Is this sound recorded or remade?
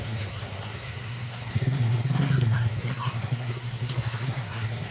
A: remade